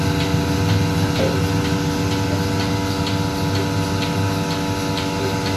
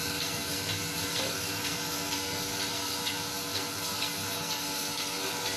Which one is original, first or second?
first